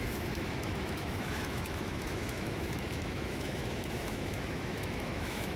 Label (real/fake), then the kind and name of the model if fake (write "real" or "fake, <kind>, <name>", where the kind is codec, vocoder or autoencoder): fake, autoencoder, DAC-VAE